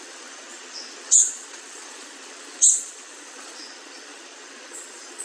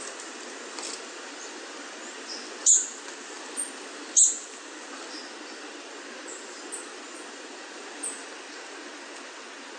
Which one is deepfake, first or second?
first